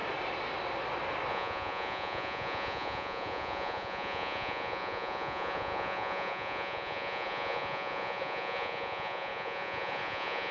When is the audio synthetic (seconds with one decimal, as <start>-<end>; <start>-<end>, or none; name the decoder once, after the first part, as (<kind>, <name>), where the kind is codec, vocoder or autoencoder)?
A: 1.3-10.5 (vocoder, Vocos)